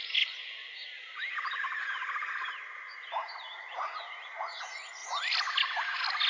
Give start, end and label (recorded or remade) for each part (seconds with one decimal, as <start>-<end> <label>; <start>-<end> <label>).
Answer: 0.0-0.8 recorded; 0.8-4.6 remade; 4.6-6.3 recorded